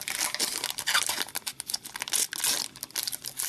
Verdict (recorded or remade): recorded